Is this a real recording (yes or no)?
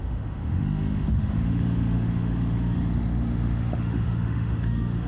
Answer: no